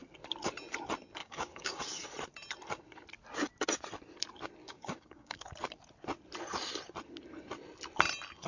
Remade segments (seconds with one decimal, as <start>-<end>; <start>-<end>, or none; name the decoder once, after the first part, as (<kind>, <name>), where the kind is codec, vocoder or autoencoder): 1.2-1.8 (codec, DAC); 4.6-5.5